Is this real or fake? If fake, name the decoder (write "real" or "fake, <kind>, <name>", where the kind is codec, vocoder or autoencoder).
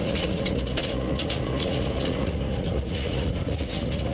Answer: fake, vocoder, Vocos